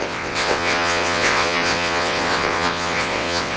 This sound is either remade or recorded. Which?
remade